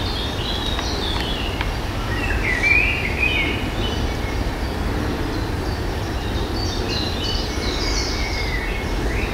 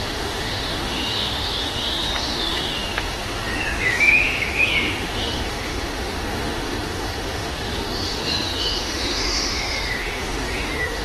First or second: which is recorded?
first